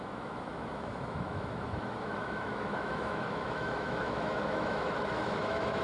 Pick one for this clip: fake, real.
fake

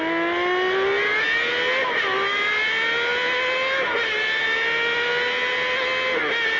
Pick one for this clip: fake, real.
real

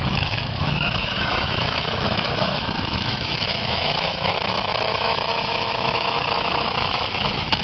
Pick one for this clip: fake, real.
fake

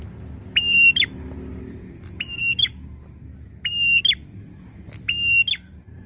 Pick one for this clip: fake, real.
real